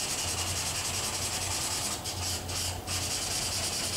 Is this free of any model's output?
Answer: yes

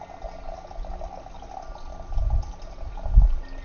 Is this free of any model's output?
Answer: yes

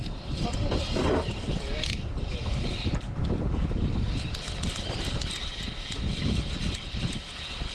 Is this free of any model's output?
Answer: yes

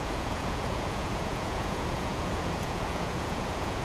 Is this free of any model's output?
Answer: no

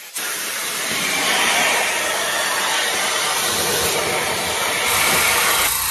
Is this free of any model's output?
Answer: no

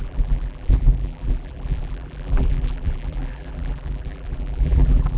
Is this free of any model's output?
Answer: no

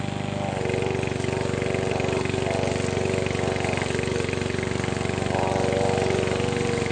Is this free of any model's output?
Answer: yes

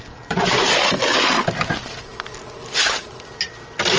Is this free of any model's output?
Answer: yes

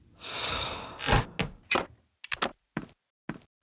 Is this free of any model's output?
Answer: yes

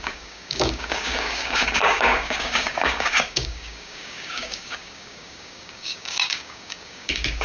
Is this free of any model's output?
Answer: no